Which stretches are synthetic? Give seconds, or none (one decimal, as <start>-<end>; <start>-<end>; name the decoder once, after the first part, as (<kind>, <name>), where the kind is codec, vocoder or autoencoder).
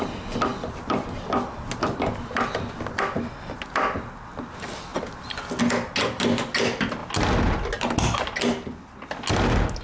none